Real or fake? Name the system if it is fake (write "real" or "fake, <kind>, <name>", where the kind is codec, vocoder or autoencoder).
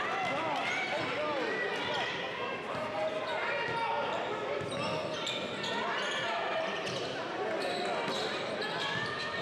real